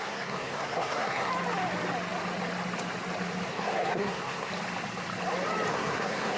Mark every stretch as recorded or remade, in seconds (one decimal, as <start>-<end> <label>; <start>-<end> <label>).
0.0-1.3 remade; 1.3-3.5 recorded; 3.5-4.5 remade; 4.5-5.7 recorded; 5.7-6.4 remade